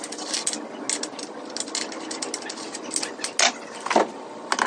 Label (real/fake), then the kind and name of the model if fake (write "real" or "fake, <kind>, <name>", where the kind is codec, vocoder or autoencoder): real